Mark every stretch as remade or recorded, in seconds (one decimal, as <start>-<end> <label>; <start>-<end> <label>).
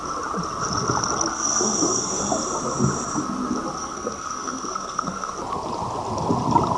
0.0-1.3 recorded; 1.3-2.2 remade; 2.2-3.8 recorded; 3.8-5.3 remade; 5.3-6.8 recorded